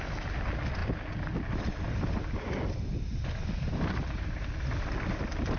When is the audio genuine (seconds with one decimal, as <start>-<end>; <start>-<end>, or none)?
0.0-5.6

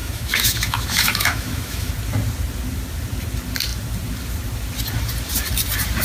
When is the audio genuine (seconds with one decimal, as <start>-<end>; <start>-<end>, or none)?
1.9-6.0

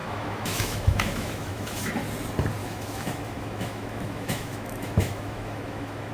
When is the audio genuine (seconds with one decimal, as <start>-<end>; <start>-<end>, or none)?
1.9-2.6